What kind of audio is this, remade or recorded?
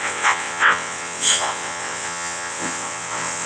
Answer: remade